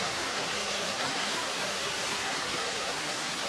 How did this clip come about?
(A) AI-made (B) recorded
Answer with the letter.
A